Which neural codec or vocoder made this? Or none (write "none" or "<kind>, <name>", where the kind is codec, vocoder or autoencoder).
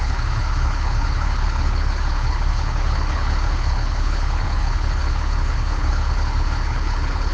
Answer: codec, HILCodec